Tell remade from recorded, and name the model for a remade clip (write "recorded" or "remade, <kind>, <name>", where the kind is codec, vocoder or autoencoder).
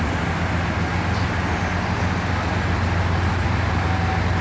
recorded